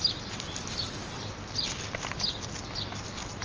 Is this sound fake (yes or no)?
no